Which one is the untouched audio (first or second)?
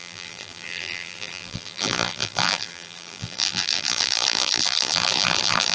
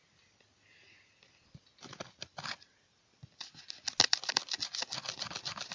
second